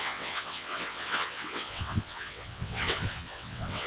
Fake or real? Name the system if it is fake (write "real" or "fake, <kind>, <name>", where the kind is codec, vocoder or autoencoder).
fake, vocoder, WaveNeXt